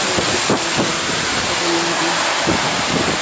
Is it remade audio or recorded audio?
recorded